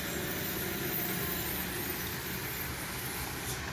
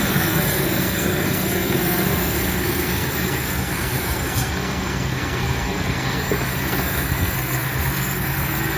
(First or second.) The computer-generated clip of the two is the second